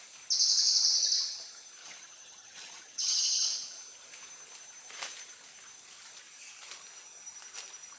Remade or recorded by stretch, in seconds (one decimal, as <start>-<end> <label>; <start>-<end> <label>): 0.0-1.8 recorded; 1.8-3.2 remade; 3.2-8.0 recorded